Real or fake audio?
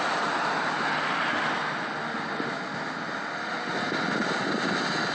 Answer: real